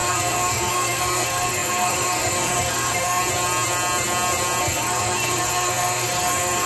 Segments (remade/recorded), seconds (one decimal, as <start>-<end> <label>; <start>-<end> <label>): 0.0-3.2 remade; 3.2-4.6 recorded; 4.6-6.7 remade